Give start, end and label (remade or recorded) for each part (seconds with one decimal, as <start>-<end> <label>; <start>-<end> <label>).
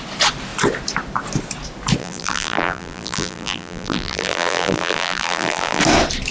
0.0-2.0 recorded; 2.0-5.8 remade; 5.8-6.3 recorded